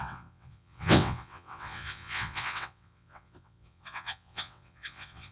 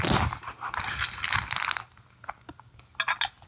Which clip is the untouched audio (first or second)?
second